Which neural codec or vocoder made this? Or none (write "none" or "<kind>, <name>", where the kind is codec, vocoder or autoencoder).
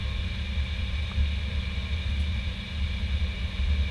none